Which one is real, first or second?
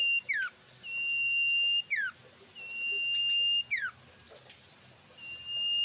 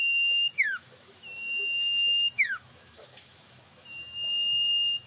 first